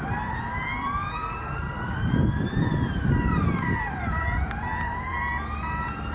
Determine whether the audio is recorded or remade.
remade